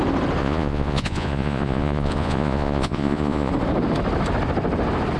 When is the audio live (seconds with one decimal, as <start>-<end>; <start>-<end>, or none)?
0.0-0.4; 3.5-5.2